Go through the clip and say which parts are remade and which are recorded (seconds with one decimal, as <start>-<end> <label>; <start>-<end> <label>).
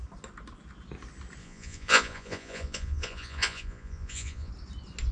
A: 0.0-1.4 recorded; 1.4-4.5 remade; 4.5-5.1 recorded